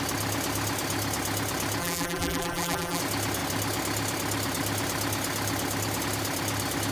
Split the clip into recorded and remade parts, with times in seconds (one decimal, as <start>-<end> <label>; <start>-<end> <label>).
0.0-1.8 recorded; 1.8-3.0 remade; 3.0-6.9 recorded